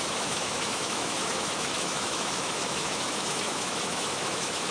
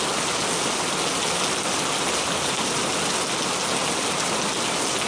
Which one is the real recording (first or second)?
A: second